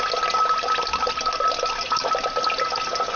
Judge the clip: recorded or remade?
recorded